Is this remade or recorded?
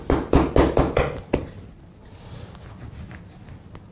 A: recorded